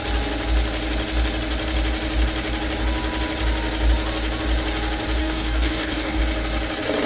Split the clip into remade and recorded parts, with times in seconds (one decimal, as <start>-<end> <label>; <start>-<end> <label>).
0.0-5.2 recorded; 5.2-6.2 remade; 6.2-7.1 recorded